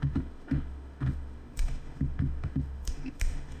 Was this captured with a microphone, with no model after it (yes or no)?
no